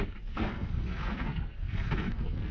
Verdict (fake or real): fake